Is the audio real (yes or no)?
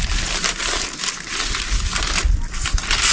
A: yes